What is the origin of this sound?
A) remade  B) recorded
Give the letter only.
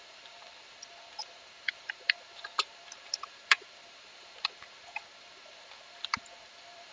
A